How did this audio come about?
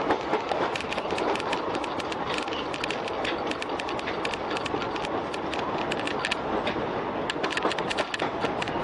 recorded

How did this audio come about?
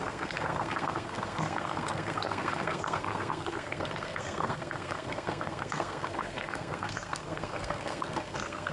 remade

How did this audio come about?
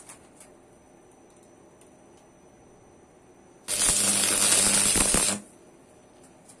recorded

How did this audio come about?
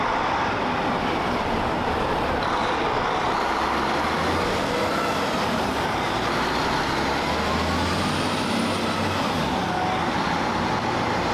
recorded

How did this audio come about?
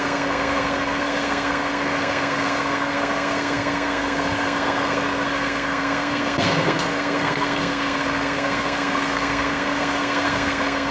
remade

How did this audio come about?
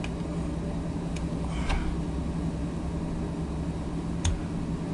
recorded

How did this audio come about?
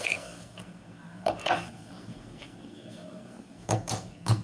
remade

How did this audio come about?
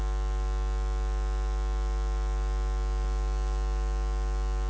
recorded